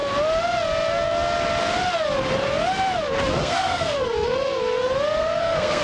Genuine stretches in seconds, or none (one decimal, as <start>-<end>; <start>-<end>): 0.0-3.4; 4.6-5.2

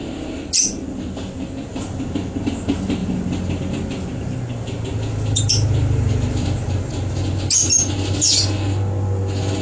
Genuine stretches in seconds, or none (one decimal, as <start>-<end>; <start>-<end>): 0.0-9.6

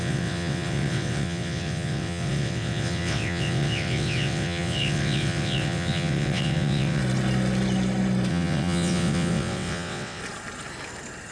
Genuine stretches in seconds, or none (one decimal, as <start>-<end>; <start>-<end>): 7.0-8.3; 10.2-11.3

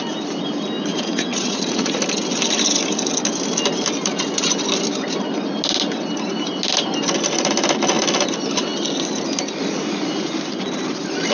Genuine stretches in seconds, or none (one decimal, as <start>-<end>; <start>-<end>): 0.0-0.9; 2.0-11.3

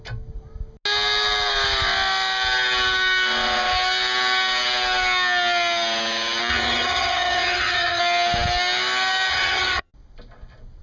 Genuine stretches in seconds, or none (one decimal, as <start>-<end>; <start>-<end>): 0.0-6.5; 8.0-9.3; 9.9-10.8

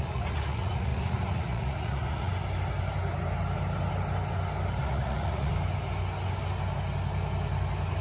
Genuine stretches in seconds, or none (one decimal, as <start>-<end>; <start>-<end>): 2.3-4.8; 5.5-8.0

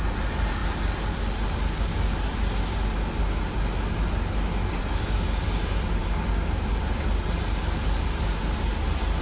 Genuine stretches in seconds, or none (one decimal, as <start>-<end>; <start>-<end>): 0.0-6.0; 6.8-9.2